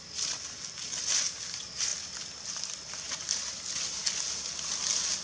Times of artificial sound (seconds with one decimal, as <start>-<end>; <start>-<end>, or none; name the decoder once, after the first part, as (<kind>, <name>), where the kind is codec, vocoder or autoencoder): none